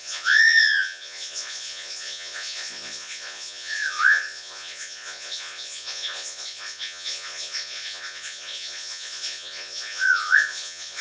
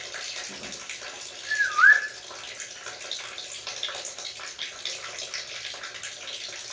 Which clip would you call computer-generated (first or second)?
first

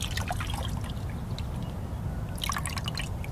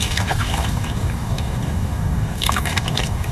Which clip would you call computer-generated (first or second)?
second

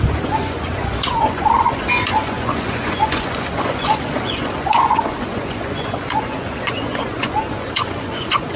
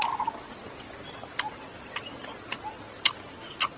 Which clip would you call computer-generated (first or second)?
first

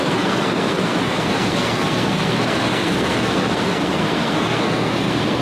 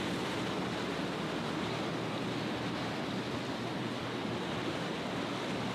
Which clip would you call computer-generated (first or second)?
first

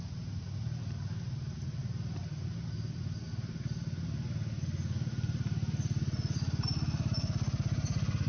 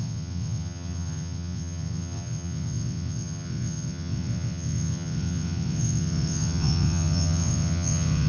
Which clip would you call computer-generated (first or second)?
second